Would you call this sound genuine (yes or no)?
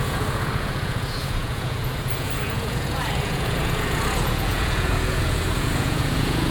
no